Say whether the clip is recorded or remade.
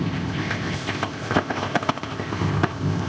remade